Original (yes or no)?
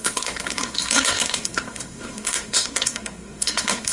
no